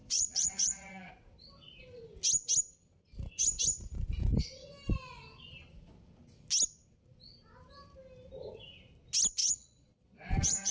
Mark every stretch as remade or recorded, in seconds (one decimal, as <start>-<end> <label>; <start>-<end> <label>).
0.0-1.1 remade; 1.1-9.4 recorded; 9.4-10.7 remade